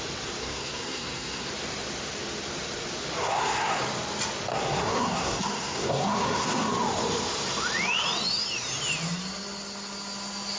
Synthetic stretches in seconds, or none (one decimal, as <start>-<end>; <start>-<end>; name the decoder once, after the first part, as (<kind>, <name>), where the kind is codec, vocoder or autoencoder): 0.4-1.5 (codec, SNAC); 3.2-3.8; 4.5-6.7